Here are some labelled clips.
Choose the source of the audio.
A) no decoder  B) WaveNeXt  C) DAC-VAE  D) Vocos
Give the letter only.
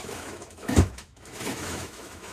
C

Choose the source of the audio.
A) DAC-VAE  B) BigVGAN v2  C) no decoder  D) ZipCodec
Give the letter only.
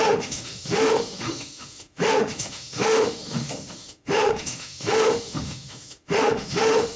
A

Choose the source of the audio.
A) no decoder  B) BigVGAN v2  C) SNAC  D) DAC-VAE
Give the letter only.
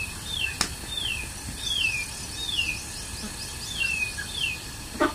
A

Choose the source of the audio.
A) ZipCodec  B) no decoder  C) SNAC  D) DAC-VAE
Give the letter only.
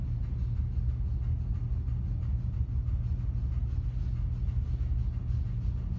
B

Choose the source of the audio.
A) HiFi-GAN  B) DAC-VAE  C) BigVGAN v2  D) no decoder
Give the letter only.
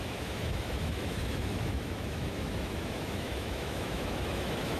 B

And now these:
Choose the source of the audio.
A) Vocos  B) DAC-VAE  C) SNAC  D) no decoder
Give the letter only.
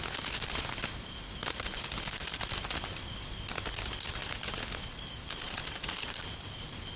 D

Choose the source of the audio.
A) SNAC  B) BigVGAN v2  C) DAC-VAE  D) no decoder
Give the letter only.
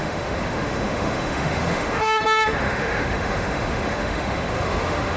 C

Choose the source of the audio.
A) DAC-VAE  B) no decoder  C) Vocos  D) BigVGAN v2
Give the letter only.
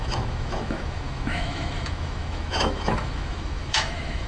A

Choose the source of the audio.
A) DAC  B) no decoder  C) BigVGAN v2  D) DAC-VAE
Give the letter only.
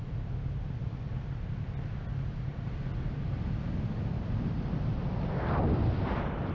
B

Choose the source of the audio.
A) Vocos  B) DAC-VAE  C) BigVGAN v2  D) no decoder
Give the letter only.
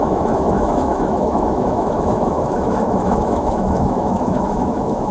B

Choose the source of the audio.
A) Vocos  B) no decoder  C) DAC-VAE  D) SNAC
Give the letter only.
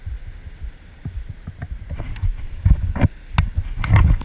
B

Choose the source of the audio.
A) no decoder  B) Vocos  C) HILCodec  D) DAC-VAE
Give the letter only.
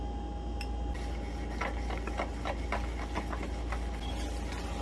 A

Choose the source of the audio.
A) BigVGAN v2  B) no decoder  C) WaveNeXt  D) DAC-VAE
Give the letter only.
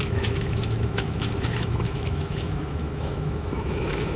D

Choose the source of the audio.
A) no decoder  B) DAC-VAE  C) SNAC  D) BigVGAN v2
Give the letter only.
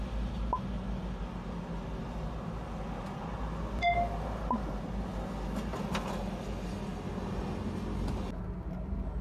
A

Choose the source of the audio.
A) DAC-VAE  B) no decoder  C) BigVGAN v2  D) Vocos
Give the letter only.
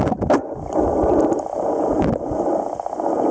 B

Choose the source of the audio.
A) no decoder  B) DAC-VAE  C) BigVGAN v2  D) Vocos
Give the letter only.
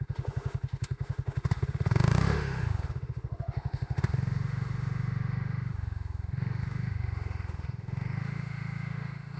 B